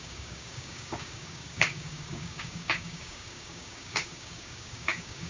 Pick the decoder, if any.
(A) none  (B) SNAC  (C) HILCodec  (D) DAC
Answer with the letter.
D